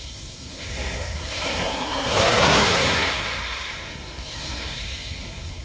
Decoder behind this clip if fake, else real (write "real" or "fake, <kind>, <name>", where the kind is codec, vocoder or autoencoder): fake, codec, SNAC